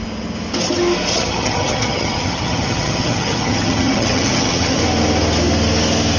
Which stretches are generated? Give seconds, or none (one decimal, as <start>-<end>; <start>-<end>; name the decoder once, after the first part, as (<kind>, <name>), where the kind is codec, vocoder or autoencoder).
1.1-4.8 (vocoder, HiFi-GAN)